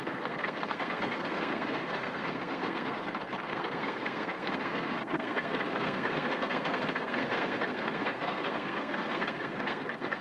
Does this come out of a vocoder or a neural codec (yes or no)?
yes